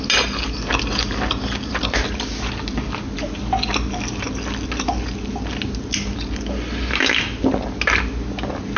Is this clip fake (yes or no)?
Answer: no